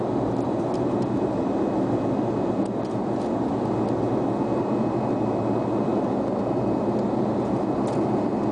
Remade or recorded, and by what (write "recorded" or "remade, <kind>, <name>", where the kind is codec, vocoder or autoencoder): recorded